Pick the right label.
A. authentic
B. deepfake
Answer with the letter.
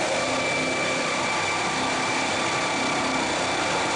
A